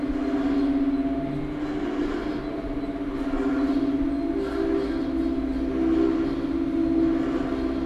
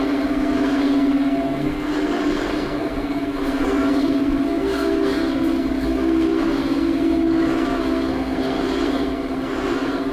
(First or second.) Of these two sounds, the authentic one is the first